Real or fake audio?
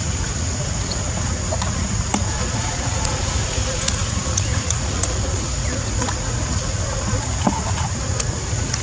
fake